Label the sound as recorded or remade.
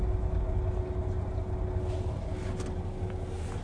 recorded